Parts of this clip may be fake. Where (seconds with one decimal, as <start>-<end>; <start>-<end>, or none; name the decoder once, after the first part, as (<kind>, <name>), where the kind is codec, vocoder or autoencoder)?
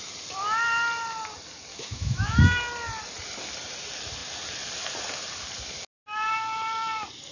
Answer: 1.7-2.4 (autoencoder, DAC-VAE)